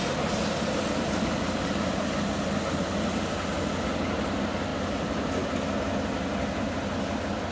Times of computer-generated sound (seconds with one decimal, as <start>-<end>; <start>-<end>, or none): none